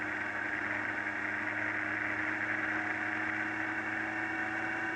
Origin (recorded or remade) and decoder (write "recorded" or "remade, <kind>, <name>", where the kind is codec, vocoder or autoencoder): recorded